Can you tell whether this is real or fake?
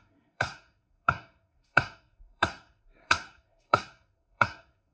fake